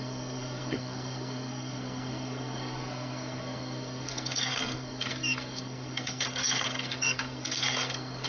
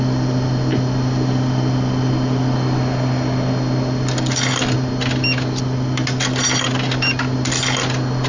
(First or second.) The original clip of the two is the second